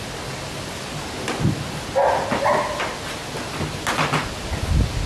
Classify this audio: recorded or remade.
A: recorded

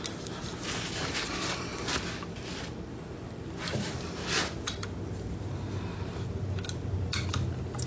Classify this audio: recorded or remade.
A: recorded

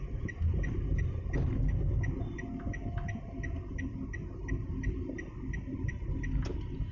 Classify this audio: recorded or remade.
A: recorded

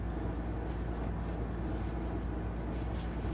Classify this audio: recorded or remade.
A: recorded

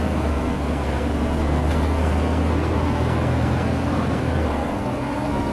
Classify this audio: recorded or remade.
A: remade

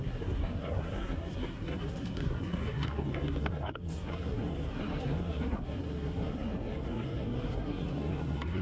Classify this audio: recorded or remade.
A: remade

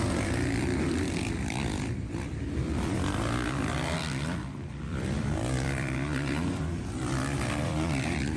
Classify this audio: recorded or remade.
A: remade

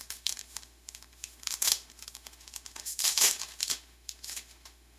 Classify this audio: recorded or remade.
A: remade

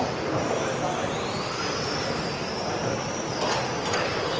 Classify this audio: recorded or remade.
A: recorded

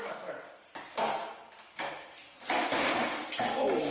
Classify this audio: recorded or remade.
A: recorded